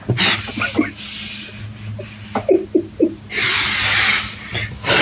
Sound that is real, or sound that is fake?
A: real